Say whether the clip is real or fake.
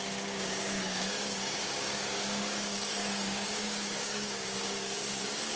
fake